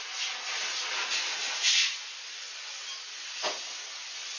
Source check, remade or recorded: recorded